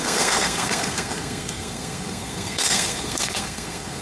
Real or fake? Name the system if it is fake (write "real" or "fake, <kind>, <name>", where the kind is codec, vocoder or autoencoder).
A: fake, codec, SNAC